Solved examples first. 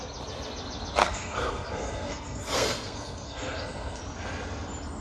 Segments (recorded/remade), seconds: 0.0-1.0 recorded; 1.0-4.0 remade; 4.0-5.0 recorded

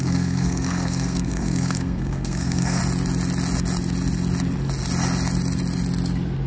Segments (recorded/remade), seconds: 0.0-2.8 remade; 2.8-6.5 recorded

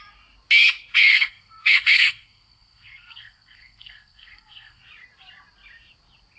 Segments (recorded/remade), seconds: 0.0-1.0 recorded; 1.0-4.8 remade; 4.8-6.4 recorded